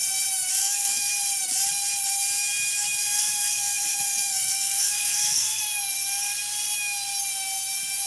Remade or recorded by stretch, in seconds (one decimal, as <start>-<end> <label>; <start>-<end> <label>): 0.0-0.6 recorded; 0.6-1.1 remade; 1.1-3.0 recorded; 3.0-5.6 remade; 5.6-8.1 recorded